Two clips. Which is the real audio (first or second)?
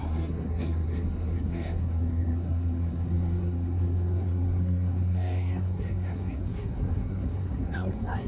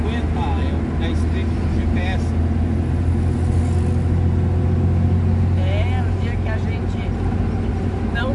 second